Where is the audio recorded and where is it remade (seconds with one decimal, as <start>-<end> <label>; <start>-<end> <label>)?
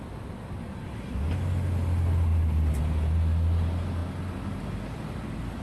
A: 0.0-5.6 recorded